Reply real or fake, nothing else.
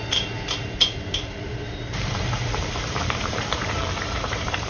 fake